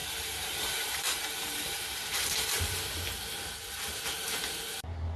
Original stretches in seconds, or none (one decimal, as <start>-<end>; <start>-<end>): 2.8-5.2